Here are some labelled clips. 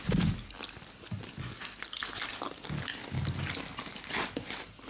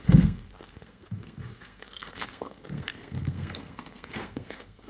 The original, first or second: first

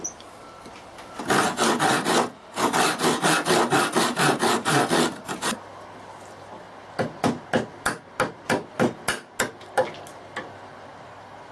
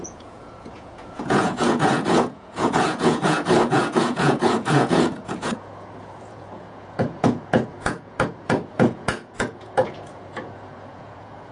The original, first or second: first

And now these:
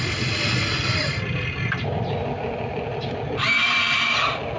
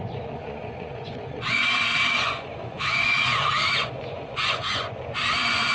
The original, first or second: first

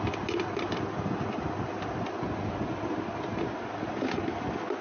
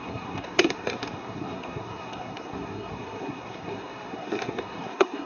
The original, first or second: first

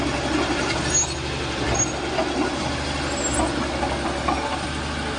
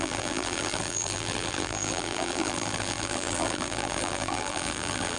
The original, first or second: first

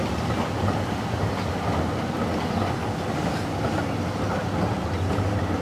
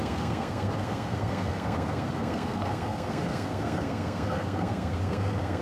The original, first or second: first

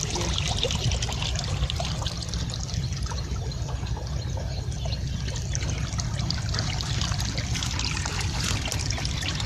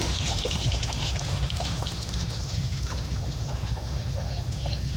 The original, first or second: first